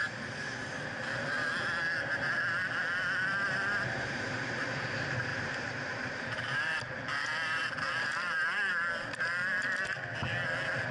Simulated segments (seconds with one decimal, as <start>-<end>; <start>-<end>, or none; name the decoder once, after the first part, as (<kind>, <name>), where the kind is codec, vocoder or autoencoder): 5.3-6.8 (vocoder, BigVGAN v2)